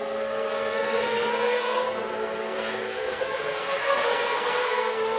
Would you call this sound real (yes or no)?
no